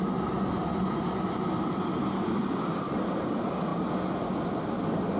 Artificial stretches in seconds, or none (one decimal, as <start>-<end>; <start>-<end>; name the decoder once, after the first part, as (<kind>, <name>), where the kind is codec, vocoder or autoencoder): none